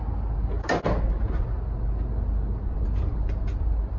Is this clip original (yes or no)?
yes